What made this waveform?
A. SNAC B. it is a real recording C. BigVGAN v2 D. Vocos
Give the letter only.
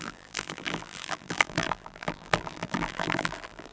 C